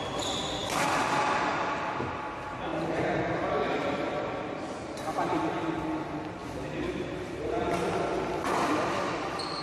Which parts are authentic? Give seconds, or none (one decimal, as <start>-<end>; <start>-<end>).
0.0-2.7; 5.4-6.4; 9.2-9.6